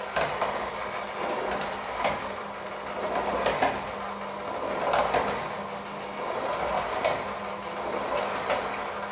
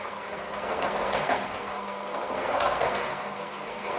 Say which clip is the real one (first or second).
first